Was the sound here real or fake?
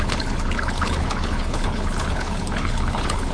fake